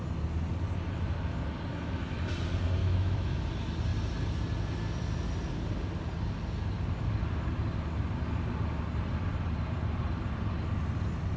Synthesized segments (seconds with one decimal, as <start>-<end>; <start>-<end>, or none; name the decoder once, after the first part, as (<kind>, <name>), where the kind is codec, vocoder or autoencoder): 1.7-2.2 (autoencoder, DAC-VAE); 2.8-3.4